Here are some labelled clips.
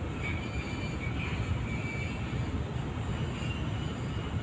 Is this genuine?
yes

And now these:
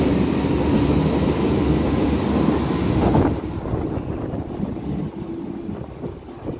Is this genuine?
yes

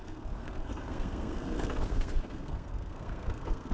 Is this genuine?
no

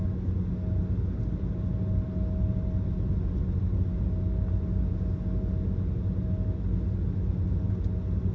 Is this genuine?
yes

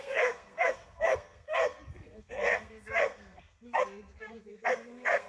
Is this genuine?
no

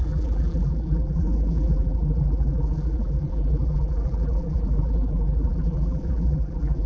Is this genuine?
no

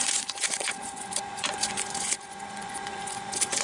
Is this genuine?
no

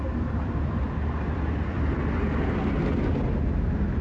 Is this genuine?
yes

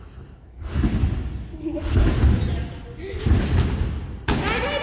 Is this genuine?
yes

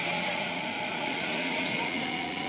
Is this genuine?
no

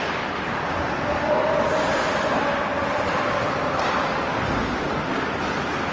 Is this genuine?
yes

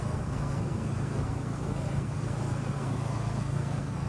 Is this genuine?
no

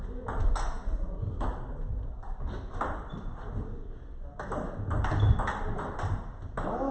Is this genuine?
yes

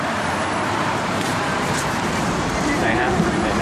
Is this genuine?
no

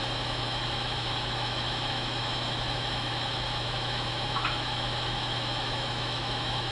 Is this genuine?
no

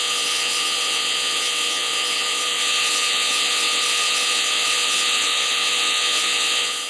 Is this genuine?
no